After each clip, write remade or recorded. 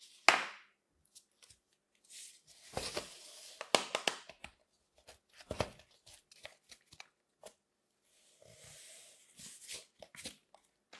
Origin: recorded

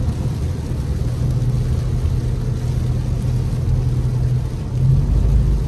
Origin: recorded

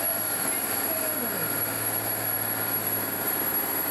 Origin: recorded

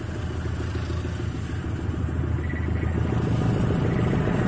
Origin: recorded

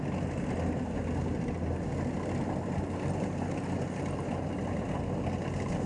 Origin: recorded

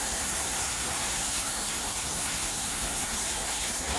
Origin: remade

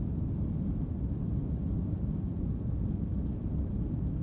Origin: recorded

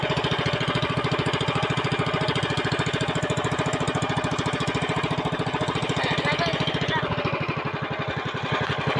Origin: recorded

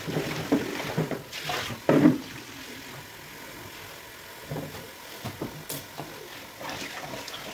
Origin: recorded